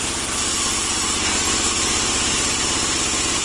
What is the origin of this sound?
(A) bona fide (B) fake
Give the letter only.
A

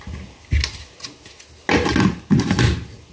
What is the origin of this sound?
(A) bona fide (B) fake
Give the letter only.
A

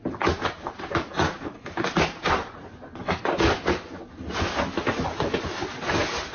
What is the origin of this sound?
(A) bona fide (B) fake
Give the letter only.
A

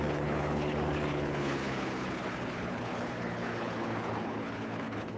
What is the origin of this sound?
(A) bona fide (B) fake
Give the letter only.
B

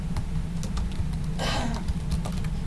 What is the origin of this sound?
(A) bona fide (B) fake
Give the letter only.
A